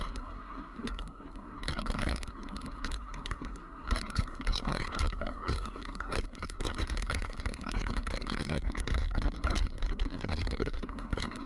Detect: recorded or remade remade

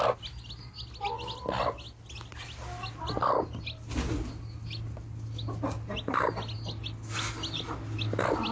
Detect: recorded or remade recorded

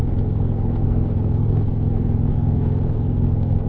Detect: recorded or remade remade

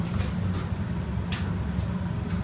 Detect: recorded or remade recorded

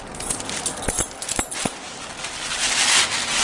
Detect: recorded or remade recorded